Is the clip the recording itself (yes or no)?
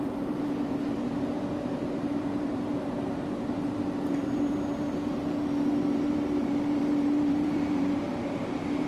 no